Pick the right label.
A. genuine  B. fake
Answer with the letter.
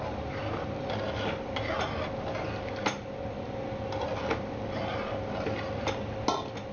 A